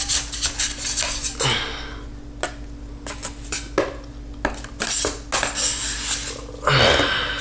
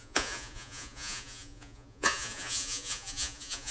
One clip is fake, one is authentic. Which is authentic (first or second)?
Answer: first